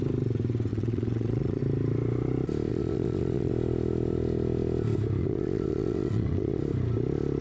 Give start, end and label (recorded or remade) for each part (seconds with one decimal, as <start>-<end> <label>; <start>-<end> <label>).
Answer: 0.0-0.7 recorded; 0.7-1.6 remade; 1.6-2.7 recorded; 2.7-3.5 remade; 3.5-5.2 recorded; 5.2-6.6 remade; 6.6-7.4 recorded